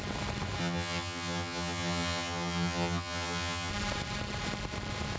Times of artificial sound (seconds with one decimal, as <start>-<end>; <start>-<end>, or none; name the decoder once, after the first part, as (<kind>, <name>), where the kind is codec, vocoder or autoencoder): 0.6-3.7 (vocoder, HiFi-GAN)